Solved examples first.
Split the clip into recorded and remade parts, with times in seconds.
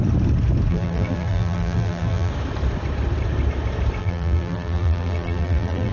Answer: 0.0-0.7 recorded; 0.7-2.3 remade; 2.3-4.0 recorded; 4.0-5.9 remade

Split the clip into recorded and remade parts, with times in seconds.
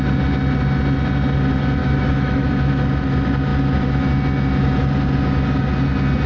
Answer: 0.0-1.8 recorded; 1.8-2.5 remade; 2.5-6.3 recorded